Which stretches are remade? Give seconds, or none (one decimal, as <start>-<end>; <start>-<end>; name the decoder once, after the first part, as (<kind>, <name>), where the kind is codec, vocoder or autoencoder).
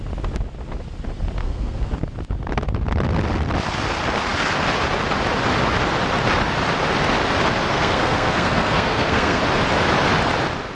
1.4-1.9 (codec, SNAC); 7.7-9.4